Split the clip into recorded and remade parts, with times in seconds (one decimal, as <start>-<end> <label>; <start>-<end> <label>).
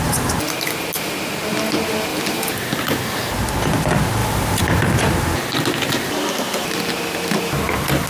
0.0-2.1 recorded; 2.1-3.3 remade; 3.3-4.2 recorded; 4.2-5.0 remade; 5.0-8.1 recorded